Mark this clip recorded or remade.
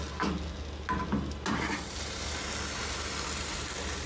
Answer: recorded